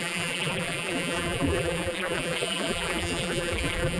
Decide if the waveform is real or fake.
fake